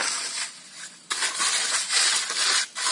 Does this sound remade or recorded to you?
recorded